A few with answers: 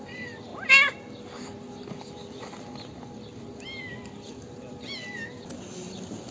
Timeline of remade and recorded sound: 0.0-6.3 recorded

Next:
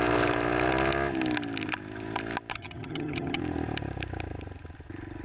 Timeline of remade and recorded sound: 0.0-2.5 recorded; 2.5-3.4 remade; 3.4-5.2 recorded

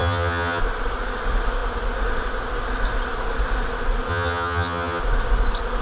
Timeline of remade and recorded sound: 0.0-0.6 remade; 0.6-4.1 recorded; 4.1-5.0 remade; 5.0-5.8 recorded

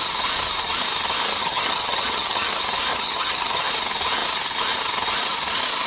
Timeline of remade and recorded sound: 0.0-1.4 recorded; 1.4-2.5 remade; 2.5-2.9 recorded; 2.9-3.7 remade; 3.7-5.9 recorded

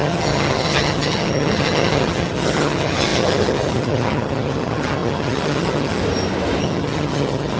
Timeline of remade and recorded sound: 0.0-6.0 remade; 6.0-6.6 recorded; 6.6-7.6 remade

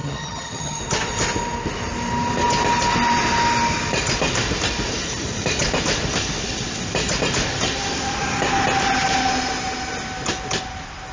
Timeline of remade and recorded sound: 0.0-0.8 remade; 0.8-11.1 recorded

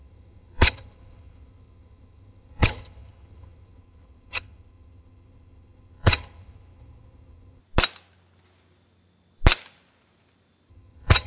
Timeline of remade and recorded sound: 0.0-7.6 remade; 7.6-10.7 recorded; 10.7-11.3 remade

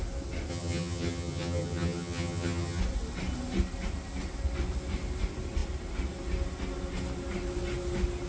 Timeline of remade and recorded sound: 0.0-0.5 recorded; 0.5-2.8 remade; 2.8-8.3 recorded